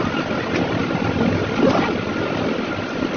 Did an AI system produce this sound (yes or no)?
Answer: no